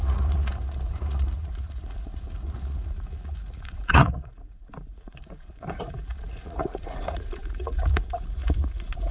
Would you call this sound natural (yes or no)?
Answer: no